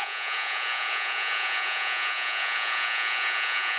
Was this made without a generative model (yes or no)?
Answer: no